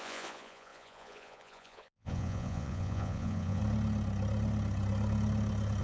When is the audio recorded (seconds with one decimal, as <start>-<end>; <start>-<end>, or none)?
3.6-5.8